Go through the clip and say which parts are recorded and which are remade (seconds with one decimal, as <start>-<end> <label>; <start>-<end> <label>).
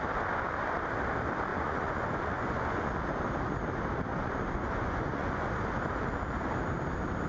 0.0-1.5 recorded; 1.5-2.9 remade; 2.9-4.1 recorded; 4.1-5.5 remade; 5.5-7.3 recorded